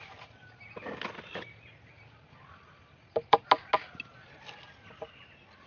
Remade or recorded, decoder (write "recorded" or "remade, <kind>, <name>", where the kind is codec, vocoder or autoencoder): recorded